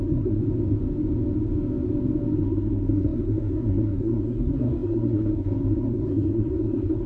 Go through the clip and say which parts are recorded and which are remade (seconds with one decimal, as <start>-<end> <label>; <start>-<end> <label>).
0.0-0.4 remade; 0.4-2.4 recorded; 2.4-7.1 remade